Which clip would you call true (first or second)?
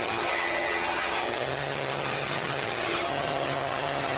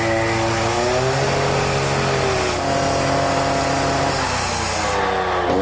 second